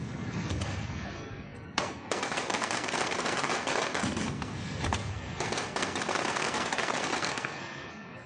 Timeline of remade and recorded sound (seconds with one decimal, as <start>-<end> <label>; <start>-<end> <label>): 0.0-8.3 remade